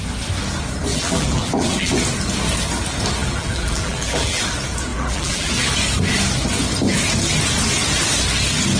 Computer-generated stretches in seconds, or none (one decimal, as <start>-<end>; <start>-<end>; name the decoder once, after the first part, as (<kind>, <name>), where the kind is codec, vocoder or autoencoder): 0.9-1.9 (vocoder, BigVGAN v2); 3.2-4.4; 4.9-5.5